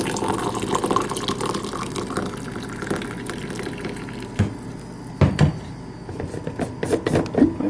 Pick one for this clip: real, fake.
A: real